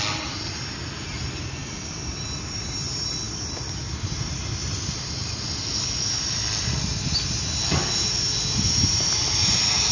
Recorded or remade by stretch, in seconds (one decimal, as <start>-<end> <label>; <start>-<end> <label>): 0.0-1.6 recorded; 1.6-3.9 remade; 3.9-4.6 recorded; 4.6-7.4 remade; 7.4-9.9 recorded